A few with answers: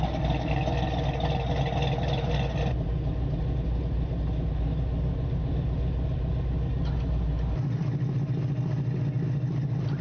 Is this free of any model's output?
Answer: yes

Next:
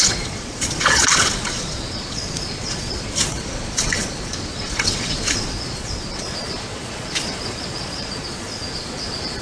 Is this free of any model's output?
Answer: no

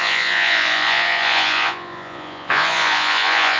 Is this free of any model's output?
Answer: no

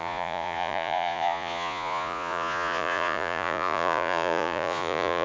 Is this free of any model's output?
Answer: no